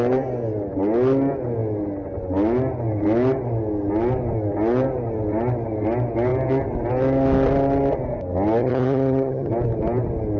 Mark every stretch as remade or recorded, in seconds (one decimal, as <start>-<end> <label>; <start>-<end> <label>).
0.0-8.6 recorded; 8.6-9.5 remade; 9.5-10.4 recorded